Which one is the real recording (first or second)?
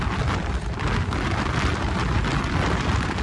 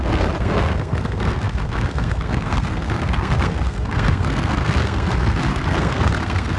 first